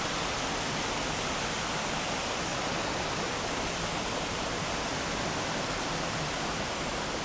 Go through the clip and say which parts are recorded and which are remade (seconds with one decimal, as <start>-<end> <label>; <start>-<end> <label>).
0.0-7.2 recorded